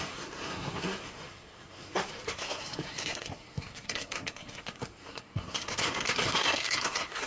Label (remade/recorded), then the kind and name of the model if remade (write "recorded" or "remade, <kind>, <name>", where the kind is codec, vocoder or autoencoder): remade, codec, SNAC